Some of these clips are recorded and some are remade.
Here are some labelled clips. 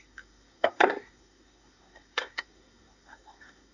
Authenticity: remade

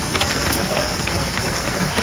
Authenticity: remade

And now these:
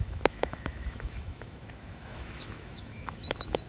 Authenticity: remade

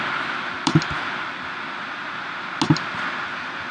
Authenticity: recorded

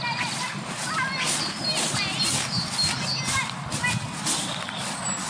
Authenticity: recorded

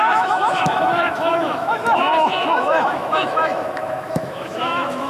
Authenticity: remade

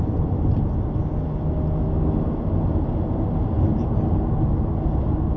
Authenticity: recorded